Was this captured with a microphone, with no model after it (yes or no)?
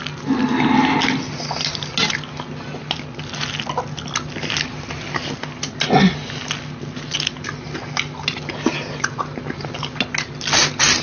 yes